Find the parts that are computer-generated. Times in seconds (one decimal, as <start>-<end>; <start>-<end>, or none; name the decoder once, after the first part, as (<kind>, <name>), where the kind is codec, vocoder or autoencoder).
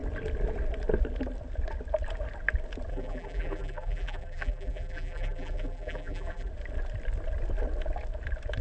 2.9-6.5 (vocoder, BigVGAN v2)